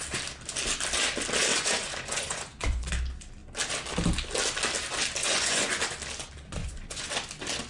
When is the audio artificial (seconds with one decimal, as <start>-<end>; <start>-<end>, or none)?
1.5-2.9; 5.2-5.8; 6.6-7.1